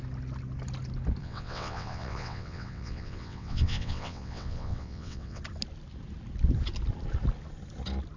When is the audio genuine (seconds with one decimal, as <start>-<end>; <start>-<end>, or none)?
0.0-1.2; 5.4-8.2